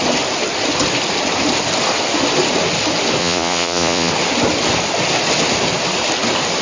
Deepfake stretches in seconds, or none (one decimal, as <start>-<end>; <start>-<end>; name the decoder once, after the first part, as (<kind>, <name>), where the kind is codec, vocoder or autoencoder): 3.2-4.1 (vocoder, Vocos)